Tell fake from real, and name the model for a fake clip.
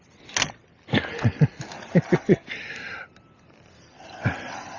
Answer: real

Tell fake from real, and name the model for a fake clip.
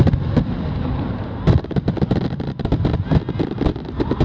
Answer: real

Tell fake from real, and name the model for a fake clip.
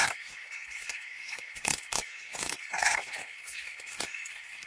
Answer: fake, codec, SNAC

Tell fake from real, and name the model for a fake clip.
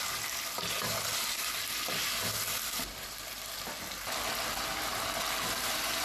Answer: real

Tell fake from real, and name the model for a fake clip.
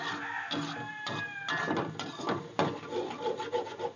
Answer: real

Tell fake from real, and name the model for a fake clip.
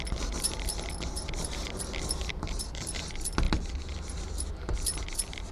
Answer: fake, vocoder, BigVGAN v2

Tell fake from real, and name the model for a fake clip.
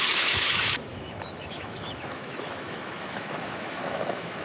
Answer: fake, autoencoder, DAC-VAE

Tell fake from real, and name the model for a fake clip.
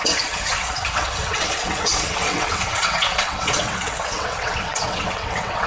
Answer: fake, vocoder, WaveNeXt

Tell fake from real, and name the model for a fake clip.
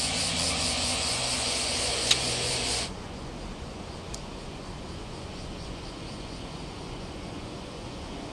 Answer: fake, vocoder, Vocos